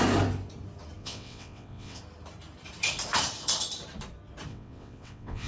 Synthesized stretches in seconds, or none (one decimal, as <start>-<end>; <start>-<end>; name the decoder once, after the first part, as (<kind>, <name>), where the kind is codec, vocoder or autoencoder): 1.0-2.0 (vocoder, WaveNeXt); 4.5-5.5